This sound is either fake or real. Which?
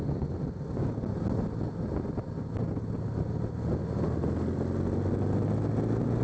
real